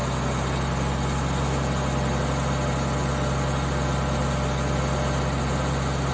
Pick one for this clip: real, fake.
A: real